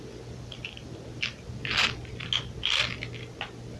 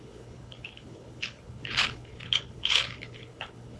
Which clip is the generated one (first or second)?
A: second